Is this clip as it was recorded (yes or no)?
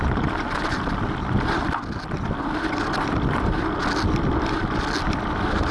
yes